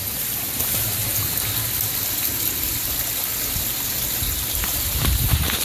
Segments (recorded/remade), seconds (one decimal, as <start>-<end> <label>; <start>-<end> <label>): 0.0-1.0 remade; 1.0-4.4 recorded; 4.4-5.6 remade

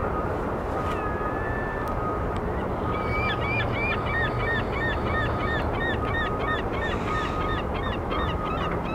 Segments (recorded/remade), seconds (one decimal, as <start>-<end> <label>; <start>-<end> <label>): 0.0-8.9 recorded

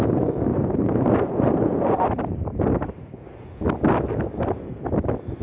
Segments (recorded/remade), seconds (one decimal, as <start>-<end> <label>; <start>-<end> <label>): 0.0-0.5 recorded; 0.5-3.0 remade; 3.0-5.4 recorded